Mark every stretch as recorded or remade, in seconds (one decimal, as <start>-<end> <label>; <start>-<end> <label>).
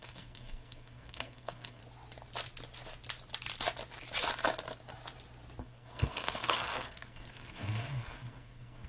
0.0-1.8 remade; 1.8-5.6 recorded; 5.6-8.9 remade